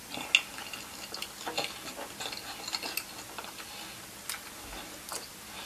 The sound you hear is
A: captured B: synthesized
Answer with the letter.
A